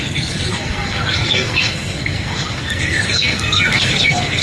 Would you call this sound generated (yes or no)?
yes